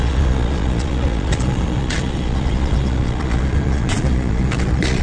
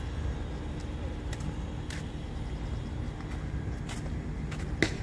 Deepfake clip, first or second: first